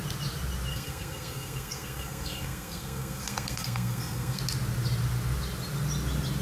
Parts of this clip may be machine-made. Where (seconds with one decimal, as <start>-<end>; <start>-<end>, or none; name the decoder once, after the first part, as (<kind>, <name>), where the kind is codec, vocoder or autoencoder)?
0.7-4.4 (codec, SNAC)

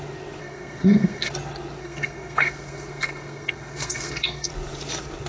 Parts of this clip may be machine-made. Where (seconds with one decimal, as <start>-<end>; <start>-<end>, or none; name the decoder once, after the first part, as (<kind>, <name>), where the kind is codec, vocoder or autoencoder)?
0.4-1.3 (codec, SNAC); 1.8-4.5

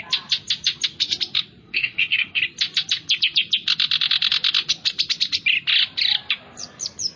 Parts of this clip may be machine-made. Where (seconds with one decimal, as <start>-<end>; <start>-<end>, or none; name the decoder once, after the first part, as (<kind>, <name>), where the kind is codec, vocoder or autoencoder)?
1.6-2.4 (codec, SNAC)

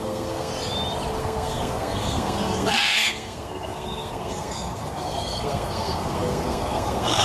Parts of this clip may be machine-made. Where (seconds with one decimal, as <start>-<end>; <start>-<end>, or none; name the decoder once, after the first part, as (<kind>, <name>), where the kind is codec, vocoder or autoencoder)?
0.0-0.5 (codec, SNAC); 1.2-7.2

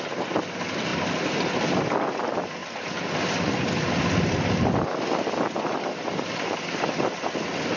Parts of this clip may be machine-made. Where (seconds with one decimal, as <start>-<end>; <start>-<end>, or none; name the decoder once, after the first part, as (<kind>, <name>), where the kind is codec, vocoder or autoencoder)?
none

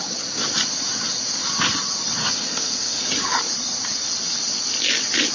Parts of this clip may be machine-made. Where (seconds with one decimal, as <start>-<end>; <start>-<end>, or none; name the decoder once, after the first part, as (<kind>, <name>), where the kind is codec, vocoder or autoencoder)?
2.2-3.0 (codec, SNAC)